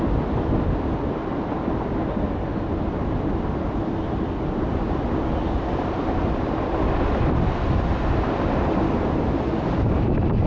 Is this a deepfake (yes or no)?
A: no